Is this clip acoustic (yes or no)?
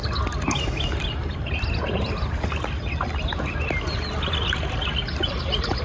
yes